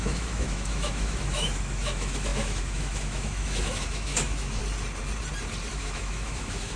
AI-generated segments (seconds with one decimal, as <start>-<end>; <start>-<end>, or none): 0.0-4.6; 5.7-6.8